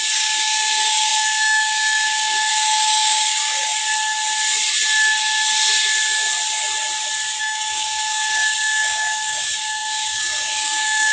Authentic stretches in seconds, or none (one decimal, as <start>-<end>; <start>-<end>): 3.8-7.4